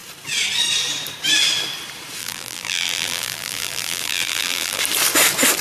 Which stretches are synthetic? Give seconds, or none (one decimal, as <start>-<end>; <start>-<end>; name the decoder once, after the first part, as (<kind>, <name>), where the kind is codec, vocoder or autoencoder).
2.2-4.8 (vocoder, BigVGAN v2)